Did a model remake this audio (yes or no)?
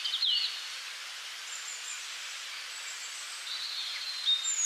no